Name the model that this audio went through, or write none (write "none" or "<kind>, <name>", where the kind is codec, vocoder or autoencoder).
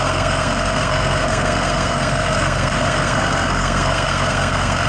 codec, SNAC